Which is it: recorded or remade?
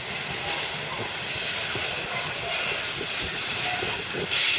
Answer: recorded